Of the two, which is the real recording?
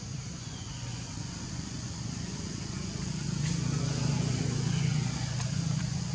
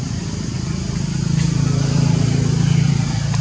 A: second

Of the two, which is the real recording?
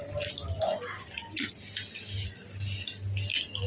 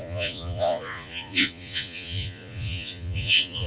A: first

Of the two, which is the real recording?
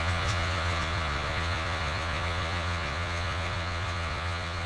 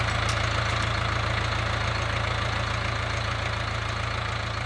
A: second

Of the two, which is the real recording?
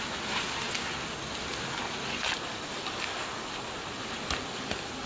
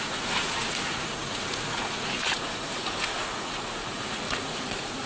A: first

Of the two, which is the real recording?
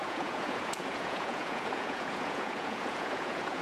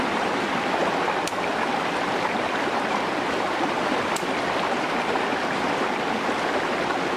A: second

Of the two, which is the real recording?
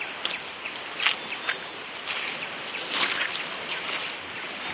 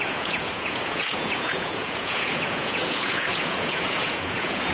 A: first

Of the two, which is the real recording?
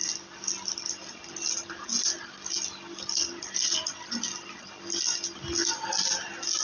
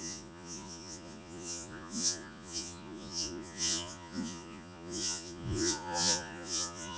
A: first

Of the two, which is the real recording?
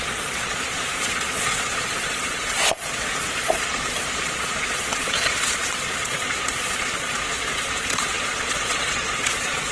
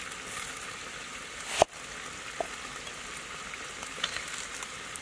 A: second